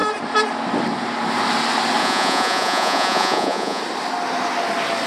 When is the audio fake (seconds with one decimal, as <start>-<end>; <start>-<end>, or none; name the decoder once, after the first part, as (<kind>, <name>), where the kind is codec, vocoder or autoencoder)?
2.0-3.8 (vocoder, Vocos)